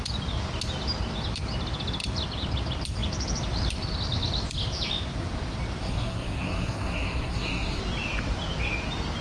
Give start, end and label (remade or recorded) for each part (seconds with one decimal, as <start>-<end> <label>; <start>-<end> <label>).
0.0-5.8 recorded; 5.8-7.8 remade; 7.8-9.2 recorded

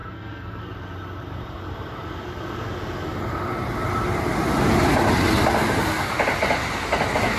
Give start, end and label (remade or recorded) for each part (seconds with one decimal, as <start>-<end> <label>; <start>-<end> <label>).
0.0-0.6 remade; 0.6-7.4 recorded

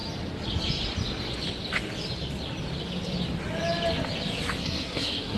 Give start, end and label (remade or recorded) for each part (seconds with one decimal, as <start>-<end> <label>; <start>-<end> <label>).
0.0-4.6 recorded; 4.6-5.4 remade

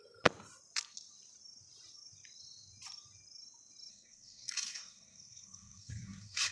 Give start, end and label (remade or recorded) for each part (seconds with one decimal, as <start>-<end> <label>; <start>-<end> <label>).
0.0-3.9 recorded; 3.9-6.5 remade

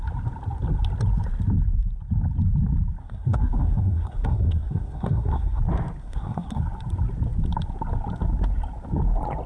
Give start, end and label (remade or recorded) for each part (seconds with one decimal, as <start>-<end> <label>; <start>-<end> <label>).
0.0-3.0 recorded; 3.0-5.6 remade; 5.6-6.0 recorded; 6.0-6.6 remade; 6.6-9.5 recorded

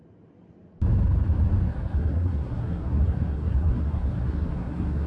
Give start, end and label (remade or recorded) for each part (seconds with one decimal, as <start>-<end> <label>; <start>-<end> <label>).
0.0-1.7 recorded; 1.7-5.1 remade

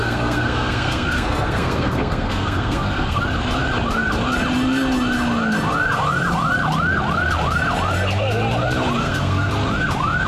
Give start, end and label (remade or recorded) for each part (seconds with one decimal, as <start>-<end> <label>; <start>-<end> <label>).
0.0-3.2 remade; 3.2-9.0 recorded; 9.0-9.5 remade; 9.5-10.3 recorded